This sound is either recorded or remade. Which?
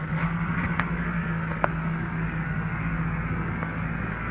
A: remade